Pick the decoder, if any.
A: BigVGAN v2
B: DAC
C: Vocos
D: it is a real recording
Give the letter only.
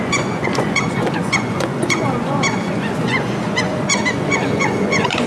C